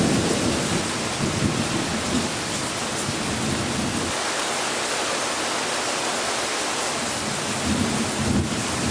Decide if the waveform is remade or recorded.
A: recorded